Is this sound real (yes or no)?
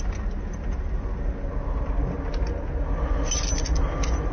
yes